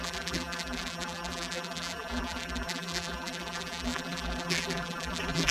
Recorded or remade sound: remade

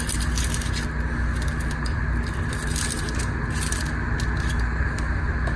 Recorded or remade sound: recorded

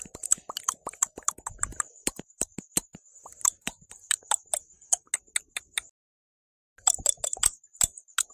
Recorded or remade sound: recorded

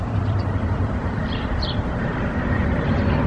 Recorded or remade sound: remade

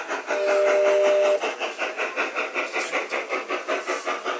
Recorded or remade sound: recorded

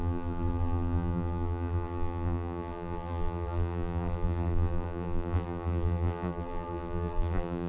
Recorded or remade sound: remade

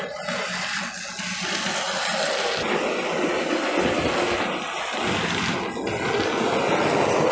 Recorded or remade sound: recorded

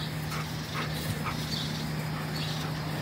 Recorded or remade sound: recorded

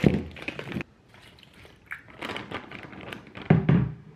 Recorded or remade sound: remade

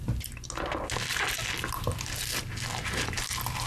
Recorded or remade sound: recorded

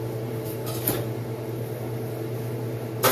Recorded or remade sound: recorded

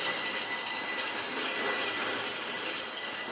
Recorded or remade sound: remade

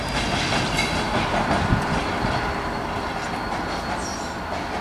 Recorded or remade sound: recorded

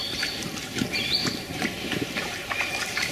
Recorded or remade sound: remade